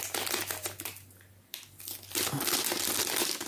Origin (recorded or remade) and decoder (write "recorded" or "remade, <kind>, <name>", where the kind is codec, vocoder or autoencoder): recorded